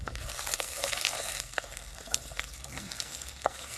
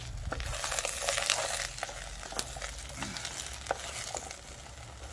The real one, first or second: second